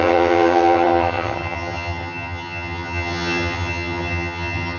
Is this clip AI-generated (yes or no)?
yes